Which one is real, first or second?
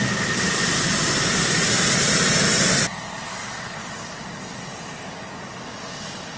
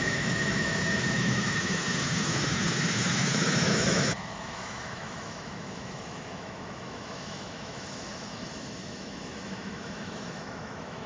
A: first